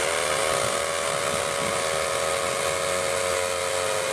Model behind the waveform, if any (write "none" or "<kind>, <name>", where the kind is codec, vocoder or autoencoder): none